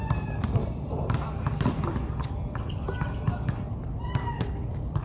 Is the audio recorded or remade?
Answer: recorded